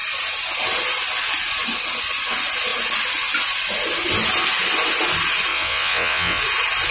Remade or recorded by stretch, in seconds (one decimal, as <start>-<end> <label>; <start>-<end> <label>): 0.0-5.5 recorded; 5.5-6.4 remade; 6.4-6.9 recorded